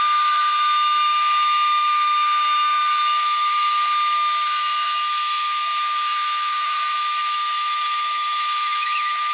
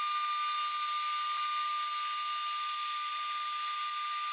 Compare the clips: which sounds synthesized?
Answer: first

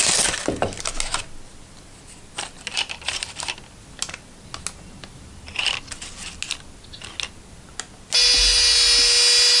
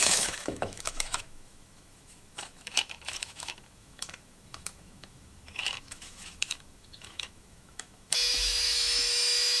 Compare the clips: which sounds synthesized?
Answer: second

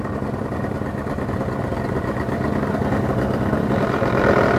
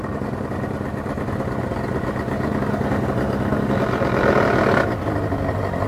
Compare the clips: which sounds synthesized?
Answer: first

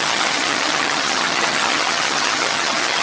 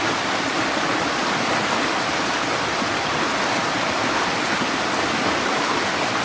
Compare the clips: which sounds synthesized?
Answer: first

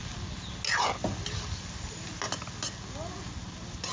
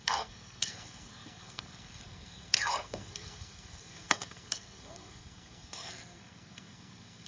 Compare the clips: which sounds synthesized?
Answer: second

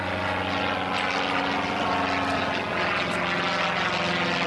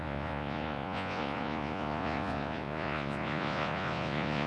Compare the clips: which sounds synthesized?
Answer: second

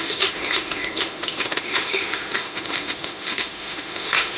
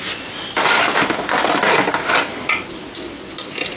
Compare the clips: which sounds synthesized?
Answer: first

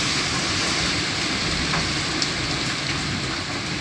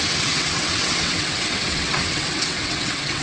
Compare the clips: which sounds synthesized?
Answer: second